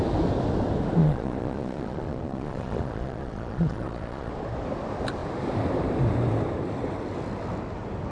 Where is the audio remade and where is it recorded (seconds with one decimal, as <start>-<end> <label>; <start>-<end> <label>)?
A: 0.0-1.0 recorded; 1.0-4.3 remade; 4.3-8.1 recorded